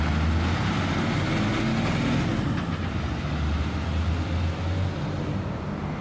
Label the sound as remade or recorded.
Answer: recorded